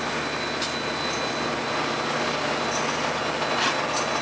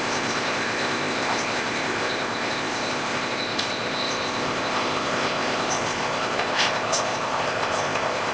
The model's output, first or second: second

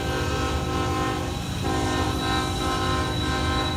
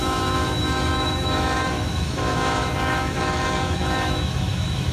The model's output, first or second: second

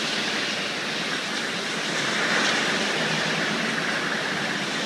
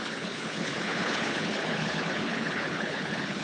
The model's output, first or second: second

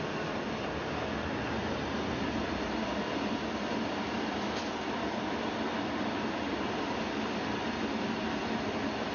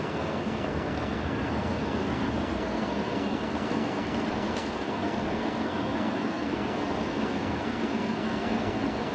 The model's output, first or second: second